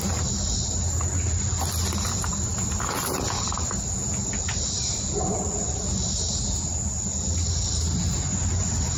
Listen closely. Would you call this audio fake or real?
real